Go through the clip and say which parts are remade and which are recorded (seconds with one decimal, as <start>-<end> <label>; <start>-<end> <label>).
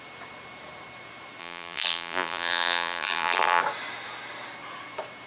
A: 0.0-1.4 recorded; 1.4-3.6 remade; 3.6-5.3 recorded